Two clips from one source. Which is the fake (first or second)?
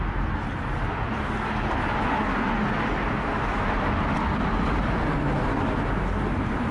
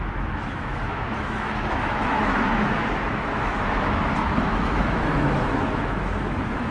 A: second